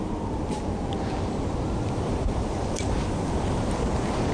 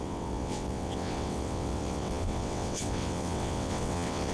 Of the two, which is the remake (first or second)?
second